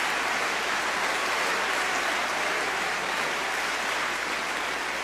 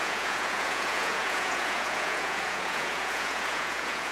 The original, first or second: first